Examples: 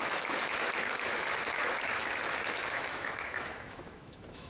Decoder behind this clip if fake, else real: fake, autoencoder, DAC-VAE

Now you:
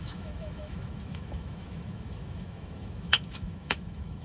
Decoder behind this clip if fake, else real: fake, autoencoder, DAC-VAE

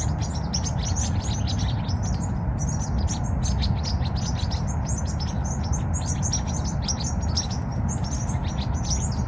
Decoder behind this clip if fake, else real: real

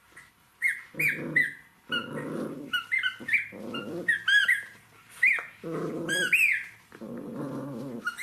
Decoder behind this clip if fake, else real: real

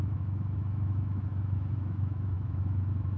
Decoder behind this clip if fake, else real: fake, autoencoder, DAC-VAE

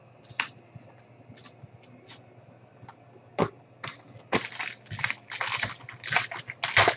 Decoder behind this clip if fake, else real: real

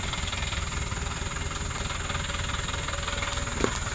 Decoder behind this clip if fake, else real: real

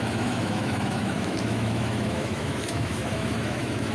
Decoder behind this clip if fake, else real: fake, autoencoder, DAC-VAE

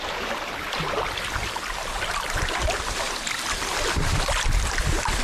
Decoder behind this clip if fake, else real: real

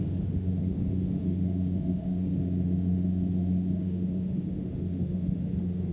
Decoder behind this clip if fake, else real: fake, autoencoder, DAC-VAE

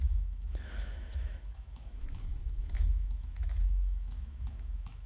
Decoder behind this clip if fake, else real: fake, autoencoder, DAC-VAE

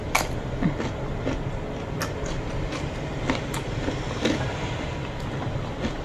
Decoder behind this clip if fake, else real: real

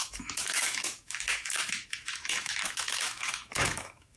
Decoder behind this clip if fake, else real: fake, autoencoder, DAC-VAE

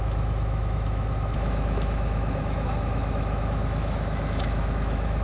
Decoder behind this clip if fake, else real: fake, autoencoder, DAC-VAE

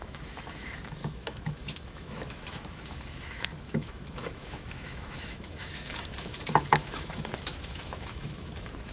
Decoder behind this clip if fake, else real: fake, autoencoder, DAC-VAE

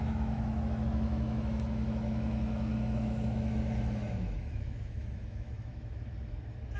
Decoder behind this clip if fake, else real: fake, autoencoder, DAC-VAE